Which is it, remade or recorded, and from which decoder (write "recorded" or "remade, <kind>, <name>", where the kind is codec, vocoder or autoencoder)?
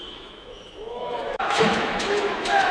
remade, autoencoder, DAC-VAE